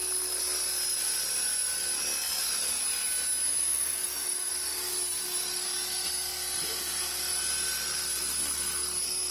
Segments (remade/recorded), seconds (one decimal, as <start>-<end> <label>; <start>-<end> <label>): 0.0-3.5 recorded; 3.5-4.5 remade; 4.5-9.3 recorded